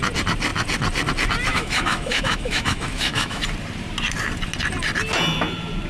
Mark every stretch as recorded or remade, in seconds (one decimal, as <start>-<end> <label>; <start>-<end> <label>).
0.0-1.5 recorded; 1.5-3.4 remade; 3.4-5.9 recorded